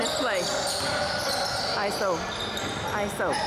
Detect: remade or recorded recorded